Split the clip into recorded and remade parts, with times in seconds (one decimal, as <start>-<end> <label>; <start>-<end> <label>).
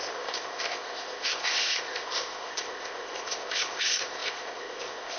0.0-5.2 remade